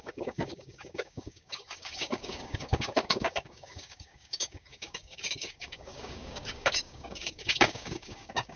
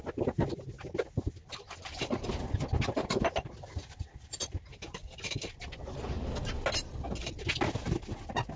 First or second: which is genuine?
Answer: second